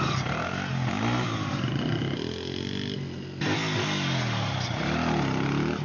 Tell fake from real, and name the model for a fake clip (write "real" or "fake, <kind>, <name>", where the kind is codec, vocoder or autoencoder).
real